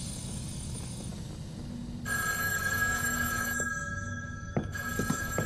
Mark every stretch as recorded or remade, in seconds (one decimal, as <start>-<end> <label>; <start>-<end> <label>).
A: 0.0-1.1 remade; 1.1-2.4 recorded; 2.4-5.5 remade